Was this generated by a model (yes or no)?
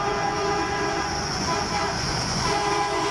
yes